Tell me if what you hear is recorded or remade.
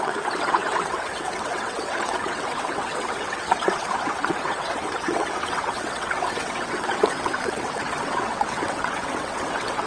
remade